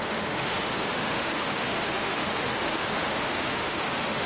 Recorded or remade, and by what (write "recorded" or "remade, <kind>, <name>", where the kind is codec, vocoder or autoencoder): remade, autoencoder, DAC-VAE